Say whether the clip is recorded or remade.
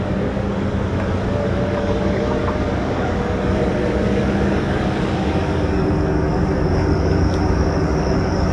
remade